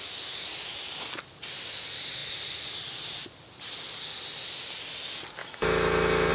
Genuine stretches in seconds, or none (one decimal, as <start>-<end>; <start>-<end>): 0.0-5.4